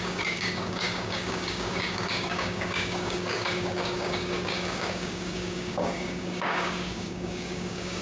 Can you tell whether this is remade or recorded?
remade